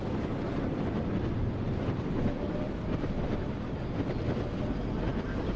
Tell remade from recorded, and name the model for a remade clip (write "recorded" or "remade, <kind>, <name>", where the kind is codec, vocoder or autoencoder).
recorded